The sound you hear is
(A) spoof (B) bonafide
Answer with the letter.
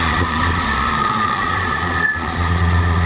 A